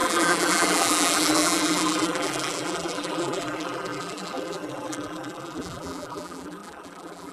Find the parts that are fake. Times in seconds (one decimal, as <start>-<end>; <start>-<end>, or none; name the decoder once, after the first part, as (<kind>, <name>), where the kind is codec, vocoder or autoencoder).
0.0-7.3 (vocoder, BigVGAN v2)